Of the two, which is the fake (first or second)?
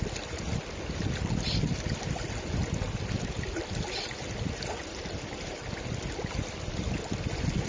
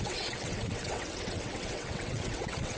second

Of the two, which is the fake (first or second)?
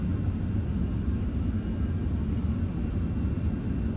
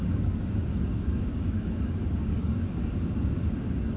second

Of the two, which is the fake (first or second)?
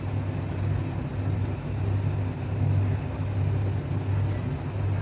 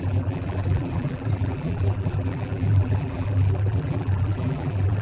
second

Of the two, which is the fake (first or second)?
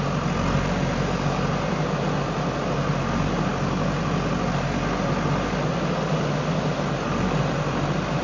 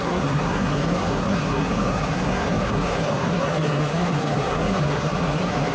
second